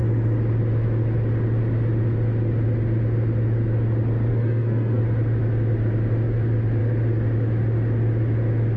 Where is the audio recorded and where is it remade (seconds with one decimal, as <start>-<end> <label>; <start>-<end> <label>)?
0.0-4.3 recorded; 4.3-5.0 remade; 5.0-8.8 recorded